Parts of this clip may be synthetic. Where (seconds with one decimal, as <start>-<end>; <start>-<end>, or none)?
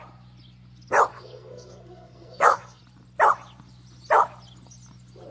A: 1.1-2.8